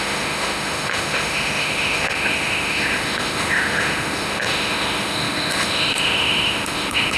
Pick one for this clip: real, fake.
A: fake